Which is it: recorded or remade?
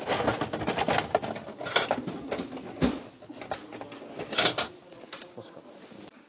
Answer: recorded